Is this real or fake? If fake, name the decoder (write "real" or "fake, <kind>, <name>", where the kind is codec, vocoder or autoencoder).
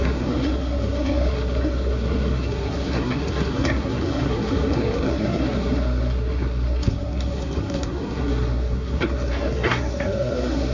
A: fake, codec, SNAC